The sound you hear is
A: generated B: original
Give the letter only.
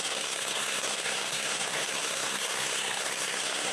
A